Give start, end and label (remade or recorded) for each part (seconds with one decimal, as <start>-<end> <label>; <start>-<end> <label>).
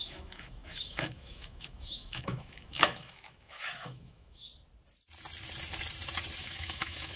0.0-4.5 remade; 4.5-6.4 recorded; 6.4-7.2 remade